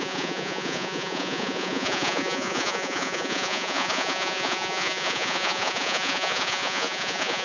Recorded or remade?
remade